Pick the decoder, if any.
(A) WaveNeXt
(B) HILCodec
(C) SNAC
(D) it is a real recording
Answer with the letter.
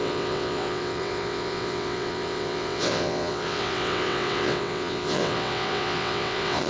A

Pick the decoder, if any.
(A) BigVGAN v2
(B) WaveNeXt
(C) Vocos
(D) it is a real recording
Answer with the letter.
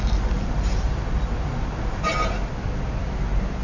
D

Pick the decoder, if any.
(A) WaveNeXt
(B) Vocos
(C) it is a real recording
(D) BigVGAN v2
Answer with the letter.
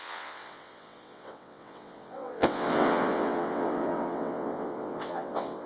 A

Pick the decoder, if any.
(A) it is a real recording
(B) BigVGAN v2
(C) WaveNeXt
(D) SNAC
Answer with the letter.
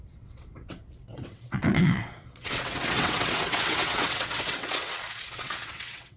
C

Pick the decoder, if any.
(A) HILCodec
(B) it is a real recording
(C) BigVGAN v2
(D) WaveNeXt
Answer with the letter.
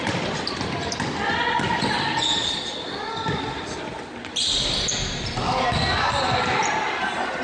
B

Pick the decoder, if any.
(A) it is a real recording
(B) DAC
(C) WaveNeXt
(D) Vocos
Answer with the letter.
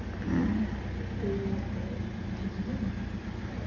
A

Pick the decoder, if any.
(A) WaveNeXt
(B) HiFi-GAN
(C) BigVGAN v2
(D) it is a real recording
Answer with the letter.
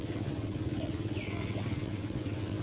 A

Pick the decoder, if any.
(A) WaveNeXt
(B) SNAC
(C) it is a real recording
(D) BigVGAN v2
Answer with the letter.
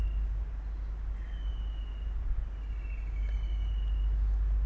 C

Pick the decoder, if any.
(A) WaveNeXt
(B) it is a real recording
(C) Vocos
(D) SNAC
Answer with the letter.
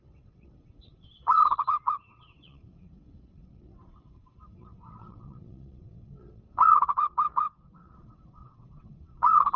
A